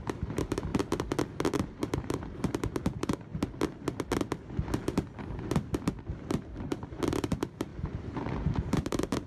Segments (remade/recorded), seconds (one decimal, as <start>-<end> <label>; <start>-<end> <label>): 0.0-0.7 remade; 0.7-1.5 recorded; 1.5-3.3 remade; 3.3-6.1 recorded; 6.1-9.3 remade